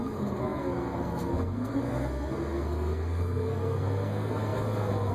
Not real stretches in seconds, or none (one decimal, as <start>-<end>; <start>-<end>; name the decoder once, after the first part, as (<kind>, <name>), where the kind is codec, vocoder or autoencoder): 0.0-5.1 (codec, SNAC)